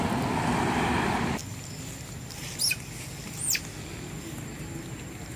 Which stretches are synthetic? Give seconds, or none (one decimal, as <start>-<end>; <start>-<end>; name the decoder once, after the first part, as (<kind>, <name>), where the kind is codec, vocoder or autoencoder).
none